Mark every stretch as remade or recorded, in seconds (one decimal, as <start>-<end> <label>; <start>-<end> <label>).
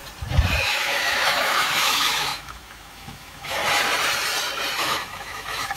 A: 0.0-0.6 recorded; 0.6-3.6 remade; 3.6-4.8 recorded; 4.8-5.8 remade